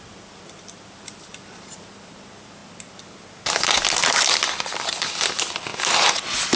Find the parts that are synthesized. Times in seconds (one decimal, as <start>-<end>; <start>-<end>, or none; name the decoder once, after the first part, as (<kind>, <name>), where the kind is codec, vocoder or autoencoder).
0.0-2.6 (vocoder, BigVGAN v2); 4.6-5.7